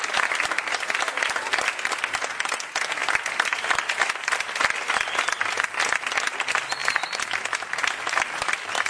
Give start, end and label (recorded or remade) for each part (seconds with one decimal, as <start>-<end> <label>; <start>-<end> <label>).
0.0-8.9 recorded